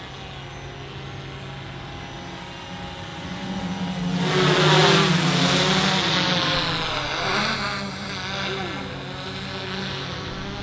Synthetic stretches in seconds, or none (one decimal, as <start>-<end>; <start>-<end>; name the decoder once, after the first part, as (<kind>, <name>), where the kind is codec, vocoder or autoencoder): 3.1-3.6 (vocoder, Vocos)